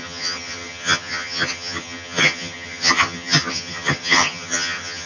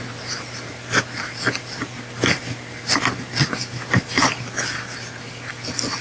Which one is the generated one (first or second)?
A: first